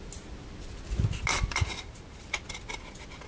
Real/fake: real